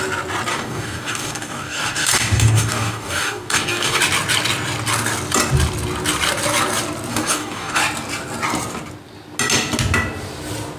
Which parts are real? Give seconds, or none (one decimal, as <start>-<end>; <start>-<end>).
0.0-0.5; 4.0-7.1; 7.8-10.8